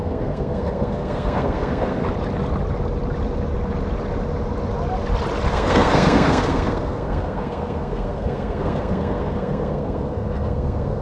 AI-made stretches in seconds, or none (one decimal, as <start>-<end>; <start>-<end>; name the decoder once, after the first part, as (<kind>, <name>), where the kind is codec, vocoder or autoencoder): 0.0-2.0 (codec, SNAC); 5.5-11.0